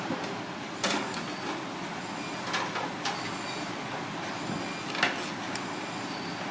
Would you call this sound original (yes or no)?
yes